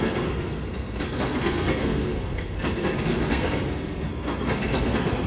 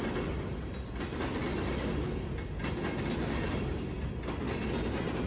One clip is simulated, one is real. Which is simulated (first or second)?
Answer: first